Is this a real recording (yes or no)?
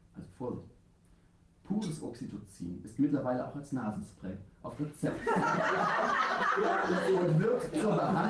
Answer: yes